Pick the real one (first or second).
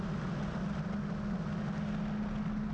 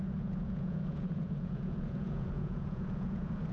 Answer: first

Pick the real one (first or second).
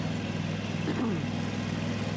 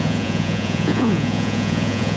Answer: first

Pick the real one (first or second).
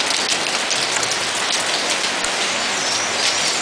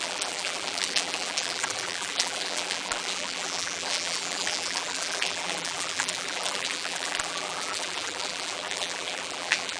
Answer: first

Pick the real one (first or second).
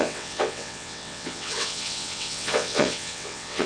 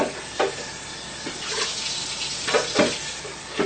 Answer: second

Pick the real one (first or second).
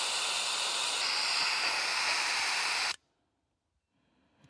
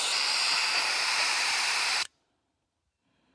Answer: first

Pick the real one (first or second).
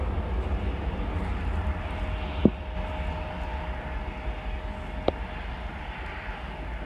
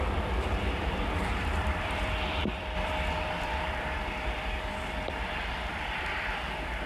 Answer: first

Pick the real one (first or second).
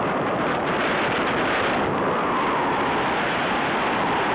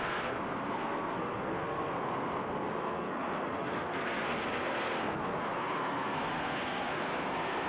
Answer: first